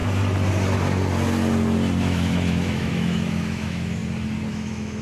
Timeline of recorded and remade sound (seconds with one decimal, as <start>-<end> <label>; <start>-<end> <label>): 0.0-2.0 recorded; 2.0-4.0 remade; 4.0-4.5 recorded; 4.5-5.0 remade